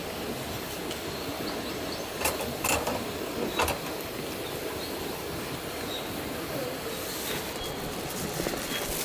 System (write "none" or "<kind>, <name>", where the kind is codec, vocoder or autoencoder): none